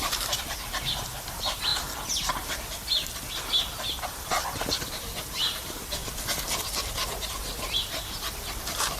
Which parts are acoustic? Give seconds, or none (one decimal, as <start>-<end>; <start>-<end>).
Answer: 1.7-4.0; 6.0-6.9